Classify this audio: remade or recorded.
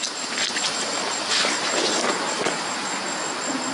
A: recorded